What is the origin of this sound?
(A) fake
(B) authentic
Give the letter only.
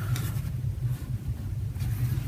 A